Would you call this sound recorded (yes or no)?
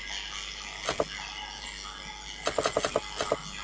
yes